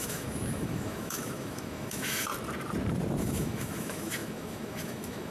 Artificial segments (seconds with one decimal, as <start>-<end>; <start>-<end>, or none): 0.0-2.3; 3.2-5.3